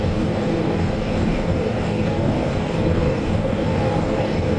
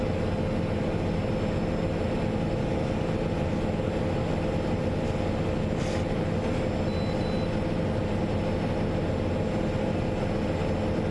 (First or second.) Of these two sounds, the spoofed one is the first